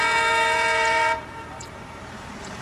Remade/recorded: remade